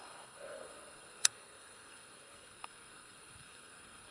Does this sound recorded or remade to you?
remade